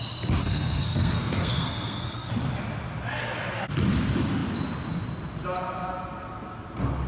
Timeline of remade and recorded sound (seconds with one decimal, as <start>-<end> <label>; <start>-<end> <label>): 0.0-0.4 recorded; 0.4-2.3 remade; 2.3-7.1 recorded